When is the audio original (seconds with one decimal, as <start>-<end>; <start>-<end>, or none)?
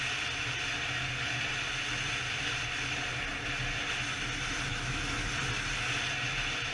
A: 0.0-4.7; 5.3-6.7